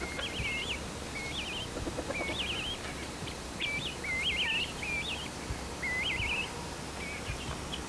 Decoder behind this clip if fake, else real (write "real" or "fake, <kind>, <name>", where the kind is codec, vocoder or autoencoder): real